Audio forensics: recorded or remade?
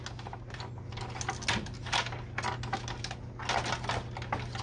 recorded